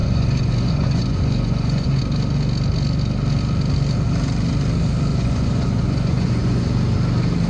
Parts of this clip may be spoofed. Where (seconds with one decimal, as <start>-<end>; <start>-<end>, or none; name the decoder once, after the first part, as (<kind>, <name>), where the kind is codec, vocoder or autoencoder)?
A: 0.0-2.0 (vocoder, Vocos); 5.1-6.7